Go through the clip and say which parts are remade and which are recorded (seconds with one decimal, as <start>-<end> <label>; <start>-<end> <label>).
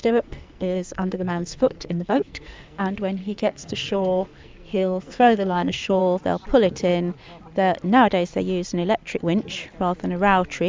0.0-2.8 remade; 2.8-3.2 recorded; 3.2-6.0 remade; 6.0-10.7 recorded